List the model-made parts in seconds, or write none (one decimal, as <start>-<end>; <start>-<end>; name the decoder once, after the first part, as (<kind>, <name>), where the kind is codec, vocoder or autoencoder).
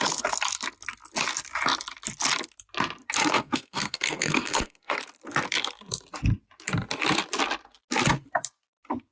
3.2-5.0 (codec, SNAC)